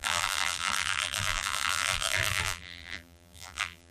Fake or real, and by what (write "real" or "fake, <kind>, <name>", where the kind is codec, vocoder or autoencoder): fake, vocoder, BigVGAN v2